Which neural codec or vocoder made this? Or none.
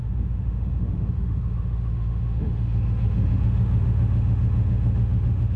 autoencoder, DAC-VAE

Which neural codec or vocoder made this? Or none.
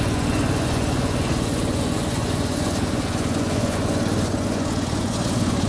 vocoder, Vocos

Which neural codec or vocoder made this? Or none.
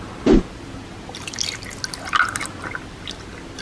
none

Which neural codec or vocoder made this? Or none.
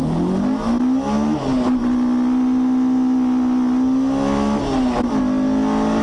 none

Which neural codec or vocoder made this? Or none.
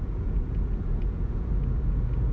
vocoder, Vocos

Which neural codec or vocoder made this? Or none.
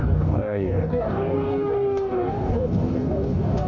codec, DAC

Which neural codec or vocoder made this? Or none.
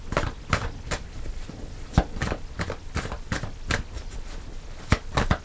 none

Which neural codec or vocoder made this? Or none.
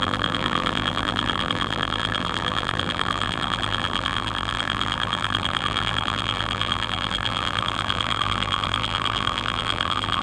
vocoder, BigVGAN v2